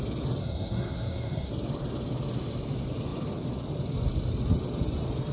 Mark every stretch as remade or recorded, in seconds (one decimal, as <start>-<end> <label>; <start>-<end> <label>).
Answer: 0.0-0.4 recorded; 0.4-1.5 remade; 1.5-5.3 recorded